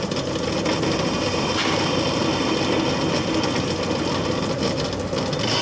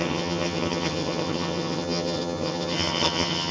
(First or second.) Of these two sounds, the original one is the first